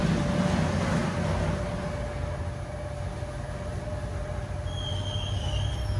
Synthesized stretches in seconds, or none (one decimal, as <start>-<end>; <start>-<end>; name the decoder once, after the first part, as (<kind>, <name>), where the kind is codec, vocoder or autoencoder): none